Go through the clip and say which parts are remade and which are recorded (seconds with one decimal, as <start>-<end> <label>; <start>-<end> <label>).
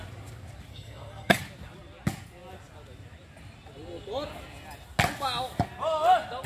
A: 0.0-0.7 recorded; 0.7-1.4 remade; 1.4-6.5 recorded